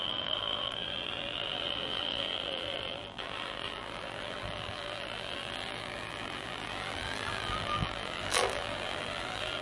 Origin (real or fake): fake